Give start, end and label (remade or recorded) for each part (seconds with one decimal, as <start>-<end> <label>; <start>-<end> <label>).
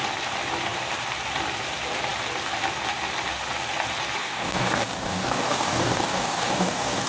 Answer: 0.0-4.2 recorded; 4.2-7.1 remade